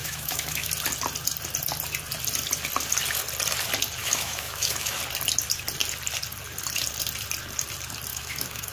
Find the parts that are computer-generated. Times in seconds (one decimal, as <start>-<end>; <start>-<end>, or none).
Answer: 0.0-0.7; 4.0-5.0; 8.1-8.7